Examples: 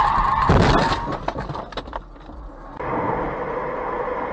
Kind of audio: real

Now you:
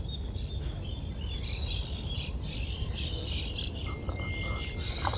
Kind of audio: real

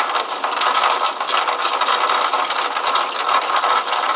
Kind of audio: real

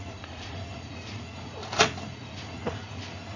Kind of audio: fake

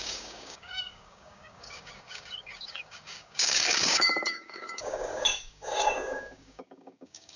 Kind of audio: fake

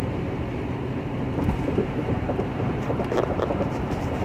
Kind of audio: fake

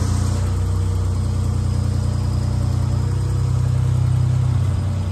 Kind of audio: real